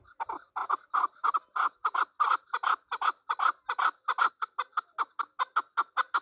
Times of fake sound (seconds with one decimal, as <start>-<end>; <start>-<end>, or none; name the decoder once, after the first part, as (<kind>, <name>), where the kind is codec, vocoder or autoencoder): none